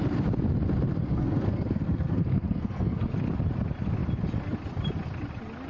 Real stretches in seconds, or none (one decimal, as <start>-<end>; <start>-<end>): 0.0-1.0; 3.1-5.7